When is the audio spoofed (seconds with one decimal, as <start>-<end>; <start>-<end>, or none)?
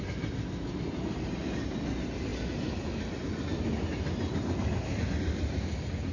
none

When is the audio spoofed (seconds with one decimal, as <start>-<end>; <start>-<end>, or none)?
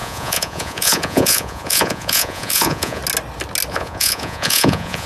0.0-3.0; 3.7-5.1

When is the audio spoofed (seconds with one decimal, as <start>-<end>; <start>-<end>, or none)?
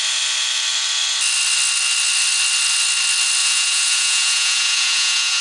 3.4-5.4